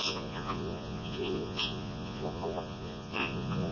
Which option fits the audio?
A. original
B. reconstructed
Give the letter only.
B